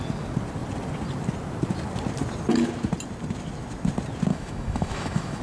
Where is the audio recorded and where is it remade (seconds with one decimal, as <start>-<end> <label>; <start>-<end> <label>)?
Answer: 0.0-4.3 recorded; 4.3-5.4 remade